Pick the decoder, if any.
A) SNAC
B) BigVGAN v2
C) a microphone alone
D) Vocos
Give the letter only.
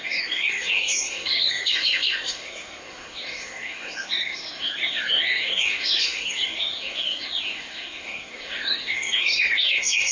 A